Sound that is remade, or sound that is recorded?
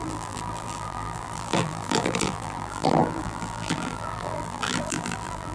remade